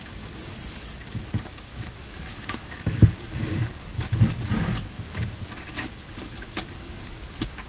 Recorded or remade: remade